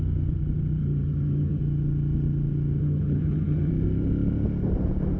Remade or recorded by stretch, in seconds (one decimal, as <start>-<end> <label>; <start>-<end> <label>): 0.0-0.8 recorded; 0.8-1.6 remade; 1.6-2.8 recorded; 2.8-3.7 remade; 3.7-5.2 recorded